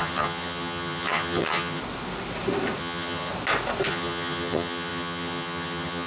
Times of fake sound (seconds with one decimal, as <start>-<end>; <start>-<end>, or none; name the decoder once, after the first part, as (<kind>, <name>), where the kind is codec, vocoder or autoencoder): 0.0-1.8 (vocoder, HiFi-GAN); 2.8-3.3; 3.9-6.1

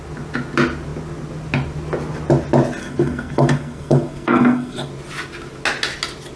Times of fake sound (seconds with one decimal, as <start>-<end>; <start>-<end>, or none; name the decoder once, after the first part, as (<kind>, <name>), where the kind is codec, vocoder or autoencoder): 2.8-4.9 (codec, SNAC)